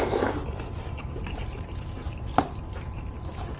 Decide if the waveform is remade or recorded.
remade